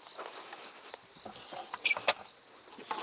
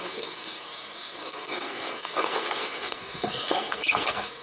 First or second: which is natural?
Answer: first